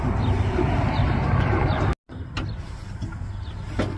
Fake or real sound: real